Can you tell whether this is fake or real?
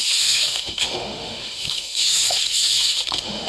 fake